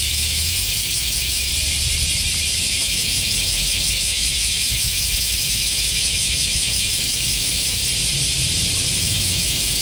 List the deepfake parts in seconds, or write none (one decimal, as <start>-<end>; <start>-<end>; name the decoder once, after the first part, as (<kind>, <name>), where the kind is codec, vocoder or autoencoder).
0.0-1.5 (autoencoder, DAC-VAE); 2.6-7.8; 9.0-9.8